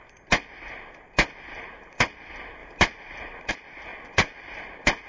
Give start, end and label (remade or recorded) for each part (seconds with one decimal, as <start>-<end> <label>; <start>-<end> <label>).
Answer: 0.0-2.6 recorded; 2.6-3.5 remade; 3.5-3.9 recorded; 3.9-5.1 remade